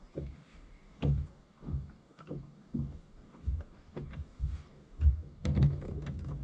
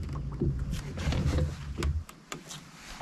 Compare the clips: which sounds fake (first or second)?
first